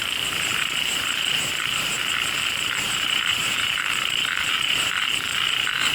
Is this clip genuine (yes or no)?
no